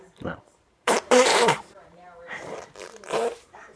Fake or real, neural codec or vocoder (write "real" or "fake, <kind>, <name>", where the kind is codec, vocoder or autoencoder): fake, vocoder, BigVGAN v2